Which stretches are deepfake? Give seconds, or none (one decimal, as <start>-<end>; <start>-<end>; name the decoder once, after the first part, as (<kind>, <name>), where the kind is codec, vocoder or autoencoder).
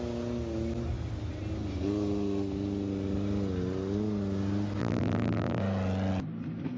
4.8-5.6 (vocoder, BigVGAN v2)